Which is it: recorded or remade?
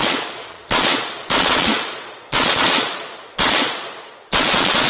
remade